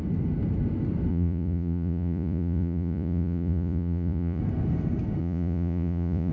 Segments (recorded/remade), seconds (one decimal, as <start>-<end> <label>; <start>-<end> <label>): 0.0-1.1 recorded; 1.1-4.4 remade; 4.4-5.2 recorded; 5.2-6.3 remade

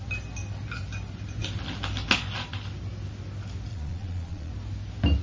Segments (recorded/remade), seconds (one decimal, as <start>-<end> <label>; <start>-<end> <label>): 0.0-3.7 recorded; 3.7-4.5 remade; 4.5-5.2 recorded

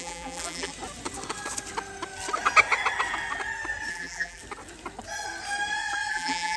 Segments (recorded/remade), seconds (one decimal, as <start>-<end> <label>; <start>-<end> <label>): 0.0-0.7 remade; 0.7-3.9 recorded; 3.9-4.4 remade; 4.4-6.1 recorded; 6.1-6.6 remade

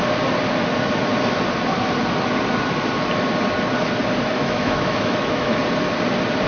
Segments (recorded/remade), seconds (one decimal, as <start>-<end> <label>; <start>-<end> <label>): 0.0-4.3 recorded; 4.3-5.6 remade; 5.6-6.5 recorded

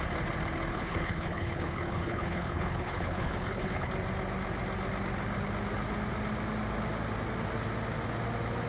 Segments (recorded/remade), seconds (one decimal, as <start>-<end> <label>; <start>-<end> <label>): 0.0-0.7 recorded; 0.7-3.9 remade; 3.9-8.7 recorded